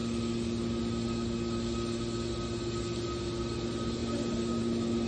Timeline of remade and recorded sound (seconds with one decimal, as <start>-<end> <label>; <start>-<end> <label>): 0.0-5.1 recorded